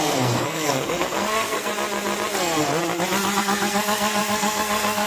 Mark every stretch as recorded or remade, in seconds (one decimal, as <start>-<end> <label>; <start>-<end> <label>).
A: 0.0-1.7 remade; 1.7-2.3 recorded; 2.3-2.7 remade; 2.7-3.4 recorded; 3.4-5.1 remade

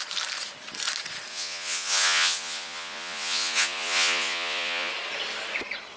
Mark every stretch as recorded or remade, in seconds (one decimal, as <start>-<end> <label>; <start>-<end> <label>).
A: 0.0-1.3 recorded; 1.3-4.9 remade; 4.9-6.0 recorded